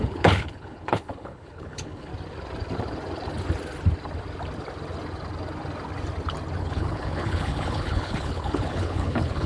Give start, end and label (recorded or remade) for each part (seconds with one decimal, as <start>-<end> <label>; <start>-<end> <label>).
0.0-2.1 remade; 2.1-6.6 recorded; 6.6-9.5 remade